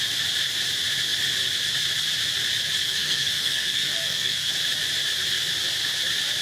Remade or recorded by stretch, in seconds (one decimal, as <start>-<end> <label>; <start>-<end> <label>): 0.0-2.8 recorded; 2.8-4.5 remade; 4.5-6.4 recorded